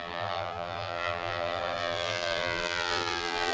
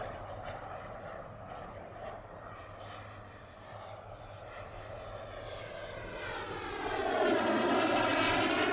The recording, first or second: second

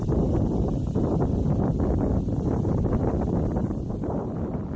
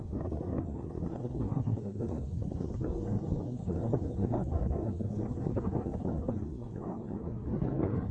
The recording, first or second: first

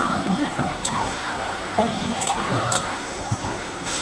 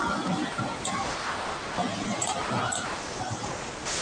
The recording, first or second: second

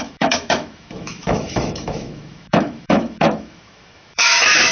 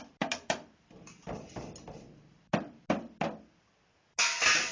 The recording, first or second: second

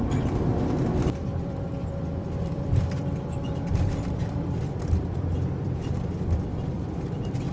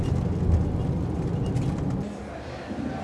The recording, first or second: second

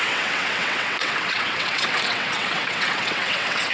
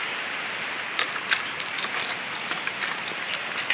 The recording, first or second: second